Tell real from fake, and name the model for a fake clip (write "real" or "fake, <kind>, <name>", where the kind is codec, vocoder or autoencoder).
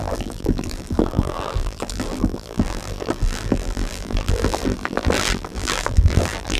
fake, vocoder, BigVGAN v2